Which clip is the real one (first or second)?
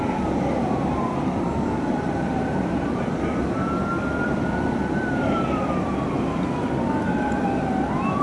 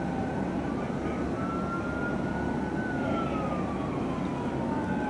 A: second